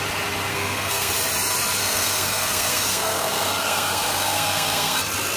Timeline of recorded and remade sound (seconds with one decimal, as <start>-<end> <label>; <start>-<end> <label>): 0.0-0.5 recorded; 0.5-1.1 remade; 1.1-1.8 recorded; 1.8-5.0 remade; 5.0-5.4 recorded